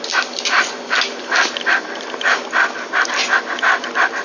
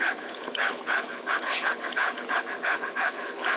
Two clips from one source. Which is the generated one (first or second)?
second